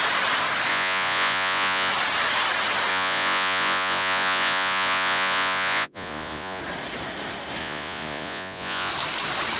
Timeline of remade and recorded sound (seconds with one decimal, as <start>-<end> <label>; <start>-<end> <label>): 0.0-0.7 recorded; 0.7-1.9 remade; 1.9-2.9 recorded; 2.9-6.6 remade; 6.6-7.6 recorded; 7.6-8.9 remade; 8.9-9.6 recorded